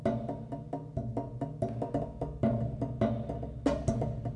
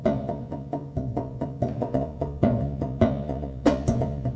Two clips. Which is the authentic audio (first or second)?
first